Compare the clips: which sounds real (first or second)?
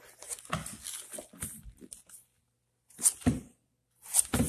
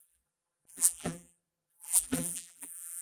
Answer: first